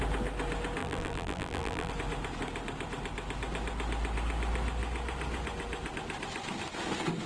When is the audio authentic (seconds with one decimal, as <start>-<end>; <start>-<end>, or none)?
0.0-0.8; 1.9-7.3